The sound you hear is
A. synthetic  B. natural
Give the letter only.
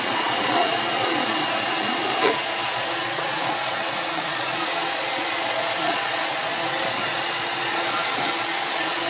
A